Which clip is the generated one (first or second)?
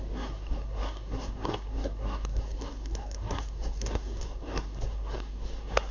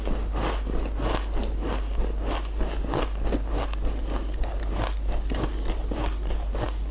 first